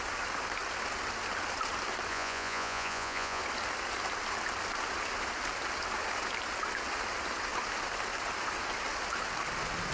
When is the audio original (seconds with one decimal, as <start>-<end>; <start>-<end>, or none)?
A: 0.0-2.1; 3.4-9.9